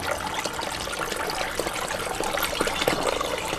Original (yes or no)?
yes